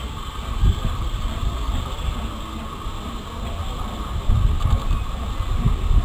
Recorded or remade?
recorded